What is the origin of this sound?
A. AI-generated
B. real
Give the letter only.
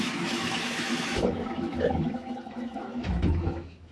A